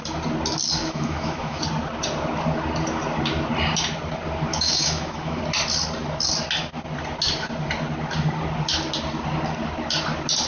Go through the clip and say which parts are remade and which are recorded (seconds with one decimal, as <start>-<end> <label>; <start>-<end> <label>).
0.0-0.8 recorded; 0.8-1.6 remade; 1.6-4.5 recorded; 4.5-5.4 remade; 5.4-10.5 recorded